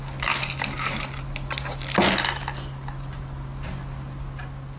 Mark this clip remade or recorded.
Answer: recorded